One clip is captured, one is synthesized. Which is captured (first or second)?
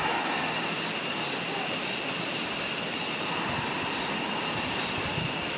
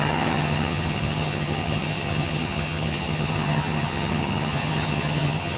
first